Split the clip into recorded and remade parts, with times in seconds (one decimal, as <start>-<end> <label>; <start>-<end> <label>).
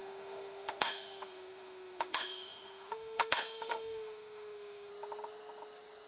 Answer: 0.0-4.9 remade; 4.9-6.1 recorded